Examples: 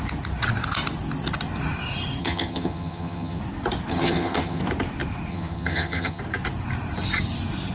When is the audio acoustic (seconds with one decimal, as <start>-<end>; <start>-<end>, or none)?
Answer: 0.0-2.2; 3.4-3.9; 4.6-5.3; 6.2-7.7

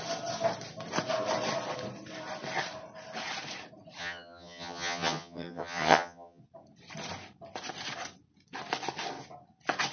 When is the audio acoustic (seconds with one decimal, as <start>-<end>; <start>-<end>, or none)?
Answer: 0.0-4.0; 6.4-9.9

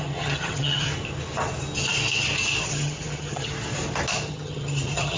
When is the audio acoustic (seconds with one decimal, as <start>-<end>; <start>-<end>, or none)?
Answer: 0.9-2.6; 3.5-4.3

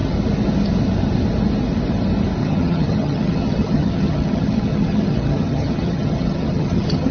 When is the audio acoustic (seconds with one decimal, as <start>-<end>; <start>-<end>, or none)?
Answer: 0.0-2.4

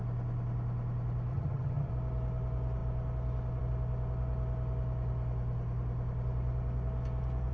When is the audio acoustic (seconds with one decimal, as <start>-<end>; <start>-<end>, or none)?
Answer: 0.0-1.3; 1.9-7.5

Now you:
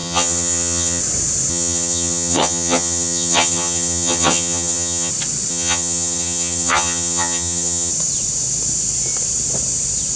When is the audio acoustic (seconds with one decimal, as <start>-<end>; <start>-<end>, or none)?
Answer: 1.0-1.5; 5.1-5.5; 7.9-10.2